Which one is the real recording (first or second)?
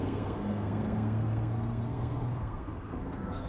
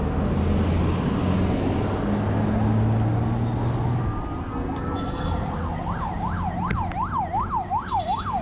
second